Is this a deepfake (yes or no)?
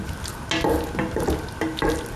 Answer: no